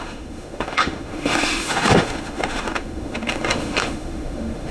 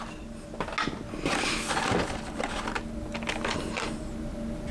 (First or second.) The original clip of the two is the second